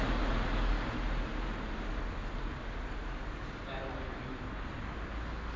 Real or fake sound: real